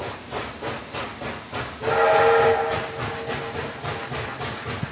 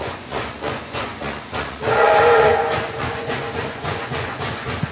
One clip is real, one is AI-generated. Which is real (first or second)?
first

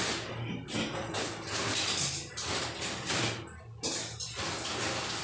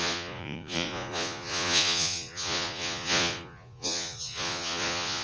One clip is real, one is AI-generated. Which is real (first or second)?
first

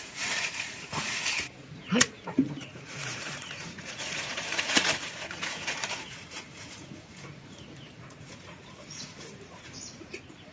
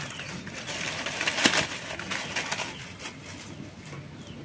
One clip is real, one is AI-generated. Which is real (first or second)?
second